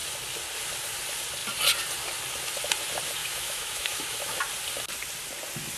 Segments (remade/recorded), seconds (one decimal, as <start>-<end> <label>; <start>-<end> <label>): 0.0-3.2 recorded; 3.2-4.4 remade; 4.4-5.8 recorded